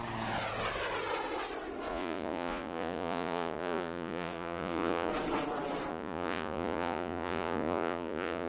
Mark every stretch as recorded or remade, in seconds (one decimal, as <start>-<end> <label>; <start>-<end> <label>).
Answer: 0.0-1.9 recorded; 1.9-5.1 remade; 5.1-5.9 recorded; 5.9-8.5 remade